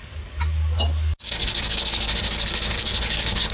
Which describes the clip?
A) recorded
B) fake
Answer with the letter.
B